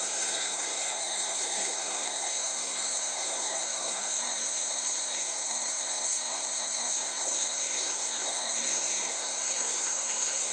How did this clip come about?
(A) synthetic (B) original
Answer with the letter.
A